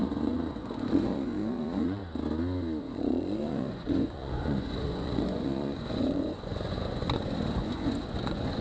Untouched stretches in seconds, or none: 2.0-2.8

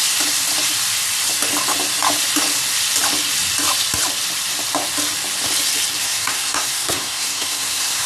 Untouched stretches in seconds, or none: 0.0-6.0

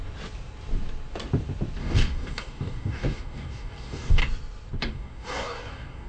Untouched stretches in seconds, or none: 0.0-1.8; 4.2-4.8

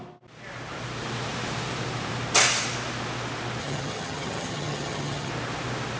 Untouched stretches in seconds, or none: 0.0-3.6; 5.3-6.0

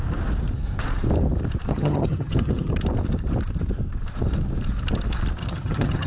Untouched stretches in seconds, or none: 0.0-1.7; 2.7-5.4